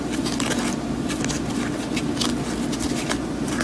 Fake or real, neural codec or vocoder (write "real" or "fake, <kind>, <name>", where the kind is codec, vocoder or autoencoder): real